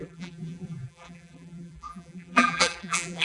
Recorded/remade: remade